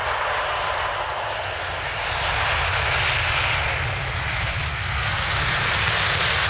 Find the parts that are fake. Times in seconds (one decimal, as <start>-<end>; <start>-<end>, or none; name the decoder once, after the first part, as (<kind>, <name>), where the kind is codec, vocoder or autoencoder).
4.7-5.9 (codec, SNAC)